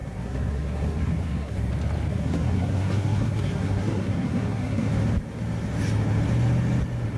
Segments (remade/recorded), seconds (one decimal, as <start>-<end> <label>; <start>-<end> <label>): 0.0-1.7 remade; 1.7-2.1 recorded; 2.1-4.9 remade; 4.9-7.2 recorded